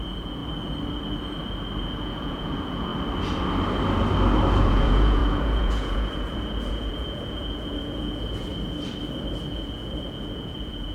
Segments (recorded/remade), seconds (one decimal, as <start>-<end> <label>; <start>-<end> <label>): 0.0-0.4 remade; 0.4-2.0 recorded; 2.0-2.9 remade; 2.9-4.6 recorded; 4.6-8.5 remade; 8.5-9.5 recorded; 9.5-10.9 remade